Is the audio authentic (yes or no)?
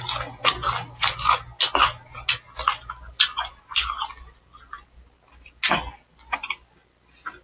yes